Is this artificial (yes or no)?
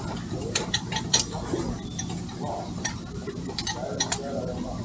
yes